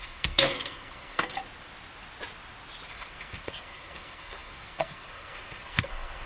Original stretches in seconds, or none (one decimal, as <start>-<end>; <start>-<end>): 1.4-2.9